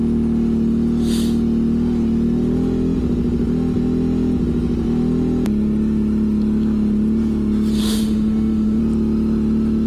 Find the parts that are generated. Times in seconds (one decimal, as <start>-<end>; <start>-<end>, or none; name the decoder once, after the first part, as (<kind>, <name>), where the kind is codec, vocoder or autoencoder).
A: 7.8-8.8 (autoencoder, DAC-VAE)